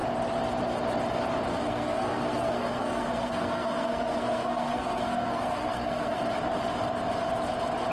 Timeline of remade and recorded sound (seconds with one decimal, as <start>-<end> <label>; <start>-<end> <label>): 0.0-1.5 recorded; 1.5-6.2 remade; 6.2-7.9 recorded